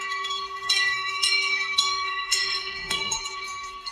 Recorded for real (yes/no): no